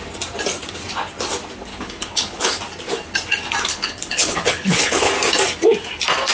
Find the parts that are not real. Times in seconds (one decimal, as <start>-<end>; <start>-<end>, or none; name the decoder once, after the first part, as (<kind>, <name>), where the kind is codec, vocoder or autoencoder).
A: 1.7-2.6 (codec, HILCodec); 3.7-5.1

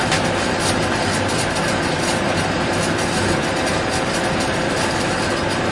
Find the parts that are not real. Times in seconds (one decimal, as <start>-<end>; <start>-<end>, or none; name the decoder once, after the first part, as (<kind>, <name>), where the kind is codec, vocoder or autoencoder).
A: none

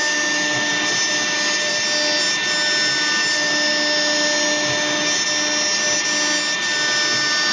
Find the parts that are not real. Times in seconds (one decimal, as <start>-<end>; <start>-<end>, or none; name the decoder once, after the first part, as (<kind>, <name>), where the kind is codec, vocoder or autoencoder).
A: none

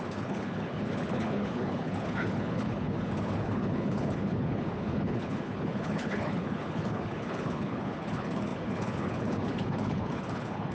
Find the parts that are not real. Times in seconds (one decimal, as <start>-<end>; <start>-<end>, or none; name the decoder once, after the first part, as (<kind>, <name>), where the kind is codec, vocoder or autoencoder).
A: 0.0-10.7 (codec, HILCodec)

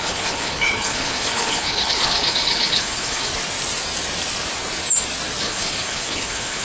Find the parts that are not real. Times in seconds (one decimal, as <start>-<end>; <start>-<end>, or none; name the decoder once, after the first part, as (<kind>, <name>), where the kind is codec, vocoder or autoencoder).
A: 0.0-3.3 (codec, HILCodec); 5.4-6.6